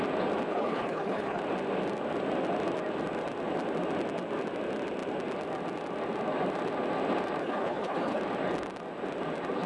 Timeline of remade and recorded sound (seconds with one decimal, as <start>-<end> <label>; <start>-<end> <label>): 0.0-0.5 recorded; 0.5-1.4 remade; 1.4-7.4 recorded; 7.4-8.2 remade; 8.2-9.7 recorded